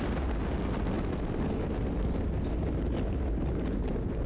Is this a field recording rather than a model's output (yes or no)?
yes